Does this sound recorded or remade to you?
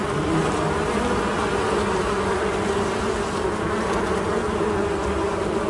recorded